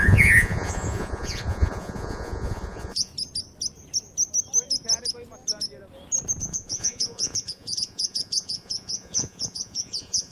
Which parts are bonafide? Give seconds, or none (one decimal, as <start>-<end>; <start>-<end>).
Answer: 3.1-6.4